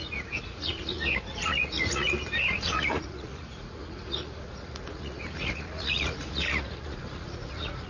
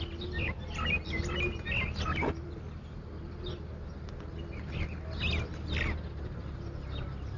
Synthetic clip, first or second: first